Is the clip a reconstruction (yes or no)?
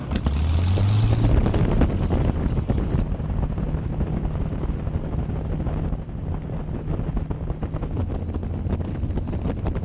no